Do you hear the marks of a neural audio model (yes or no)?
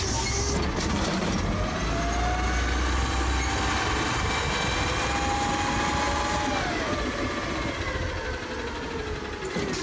no